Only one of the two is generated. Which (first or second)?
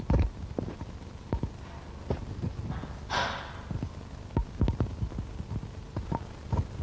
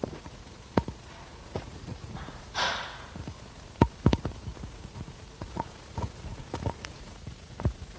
second